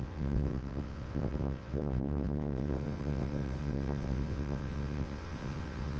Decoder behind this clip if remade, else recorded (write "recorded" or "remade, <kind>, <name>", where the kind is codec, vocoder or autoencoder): remade, vocoder, WaveNeXt